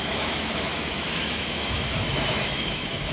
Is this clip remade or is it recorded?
remade